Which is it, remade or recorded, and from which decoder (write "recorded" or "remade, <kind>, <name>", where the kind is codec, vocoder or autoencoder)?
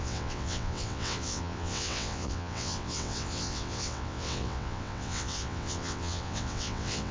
remade, vocoder, WaveNeXt